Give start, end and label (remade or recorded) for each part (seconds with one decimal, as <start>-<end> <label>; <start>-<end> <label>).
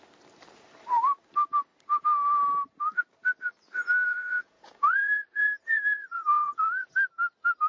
0.0-4.1 recorded; 4.1-6.9 remade; 6.9-7.7 recorded